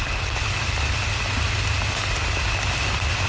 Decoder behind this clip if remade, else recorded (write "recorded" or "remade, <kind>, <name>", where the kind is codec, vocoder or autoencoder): recorded